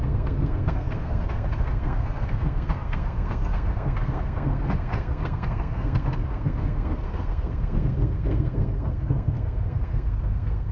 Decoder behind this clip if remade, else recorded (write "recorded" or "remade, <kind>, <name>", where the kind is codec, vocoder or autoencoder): remade, codec, SNAC